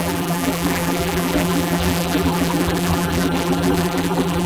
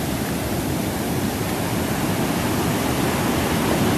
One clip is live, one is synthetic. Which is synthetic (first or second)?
first